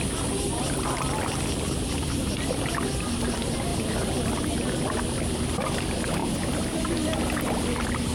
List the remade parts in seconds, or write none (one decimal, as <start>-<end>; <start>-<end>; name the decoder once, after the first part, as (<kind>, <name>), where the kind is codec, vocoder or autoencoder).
6.2-6.8 (vocoder, BigVGAN v2)